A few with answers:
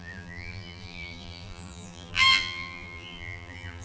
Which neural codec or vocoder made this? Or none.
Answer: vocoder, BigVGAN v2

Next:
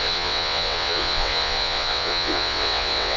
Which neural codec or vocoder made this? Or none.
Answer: vocoder, WaveNeXt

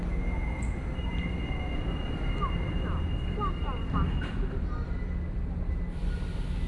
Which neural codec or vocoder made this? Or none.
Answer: none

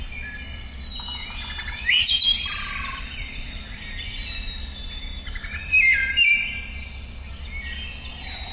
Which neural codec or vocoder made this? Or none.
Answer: none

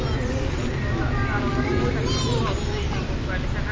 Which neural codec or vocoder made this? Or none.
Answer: none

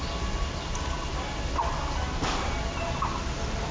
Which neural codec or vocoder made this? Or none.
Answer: vocoder, BigVGAN v2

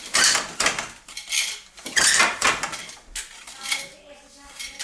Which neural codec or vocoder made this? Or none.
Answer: none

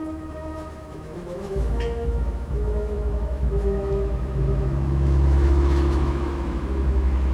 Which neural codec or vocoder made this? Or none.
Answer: autoencoder, DAC-VAE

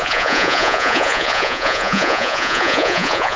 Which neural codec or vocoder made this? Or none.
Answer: vocoder, Vocos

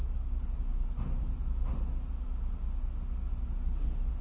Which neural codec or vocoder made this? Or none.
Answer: none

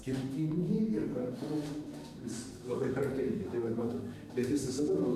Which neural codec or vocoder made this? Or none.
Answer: codec, SNAC